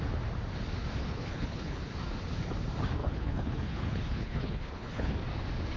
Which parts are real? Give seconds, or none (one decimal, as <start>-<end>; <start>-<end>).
0.0-1.0; 1.8-3.0; 5.1-5.8